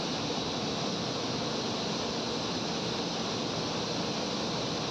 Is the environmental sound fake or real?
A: real